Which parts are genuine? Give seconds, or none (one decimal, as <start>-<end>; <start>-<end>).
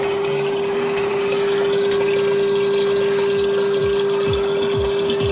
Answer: 0.0-5.3